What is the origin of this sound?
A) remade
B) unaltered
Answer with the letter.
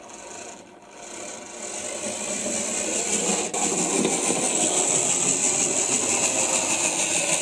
B